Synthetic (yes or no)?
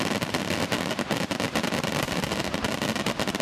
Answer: no